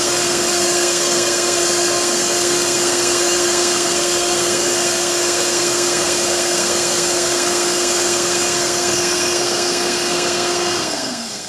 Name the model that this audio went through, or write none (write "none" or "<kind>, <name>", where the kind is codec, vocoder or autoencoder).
codec, SNAC